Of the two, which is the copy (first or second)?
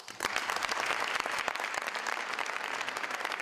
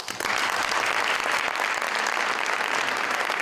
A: first